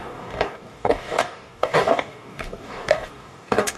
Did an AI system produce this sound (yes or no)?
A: yes